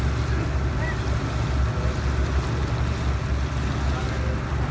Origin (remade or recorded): recorded